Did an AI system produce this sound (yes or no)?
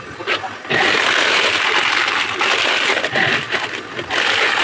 no